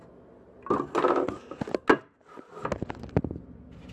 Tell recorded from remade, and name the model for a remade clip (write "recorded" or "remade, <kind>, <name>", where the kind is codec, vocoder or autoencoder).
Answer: recorded